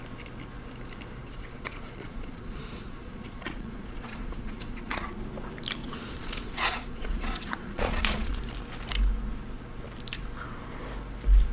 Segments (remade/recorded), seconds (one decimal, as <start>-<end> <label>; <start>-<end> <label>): 0.0-1.2 recorded; 1.2-5.2 remade; 5.2-5.8 recorded; 5.8-8.4 remade; 8.4-11.5 recorded